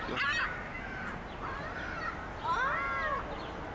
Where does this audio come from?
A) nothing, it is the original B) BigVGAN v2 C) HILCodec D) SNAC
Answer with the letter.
A